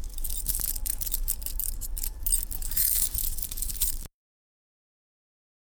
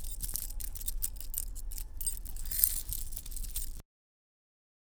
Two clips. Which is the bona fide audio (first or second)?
second